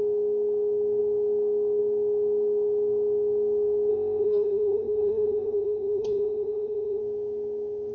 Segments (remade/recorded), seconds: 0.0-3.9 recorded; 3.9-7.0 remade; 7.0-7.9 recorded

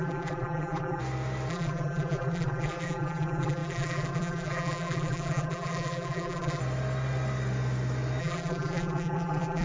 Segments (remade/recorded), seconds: 0.0-1.0 remade; 1.0-1.5 recorded; 1.5-6.6 remade; 6.6-8.2 recorded; 8.2-9.6 remade